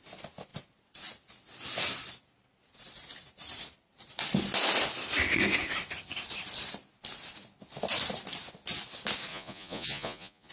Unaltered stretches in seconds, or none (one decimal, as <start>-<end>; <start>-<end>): 0.0-9.3